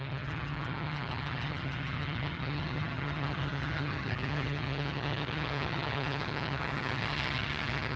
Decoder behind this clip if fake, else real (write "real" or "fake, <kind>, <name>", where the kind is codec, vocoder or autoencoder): fake, vocoder, HiFi-GAN